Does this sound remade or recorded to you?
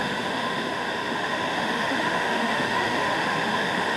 remade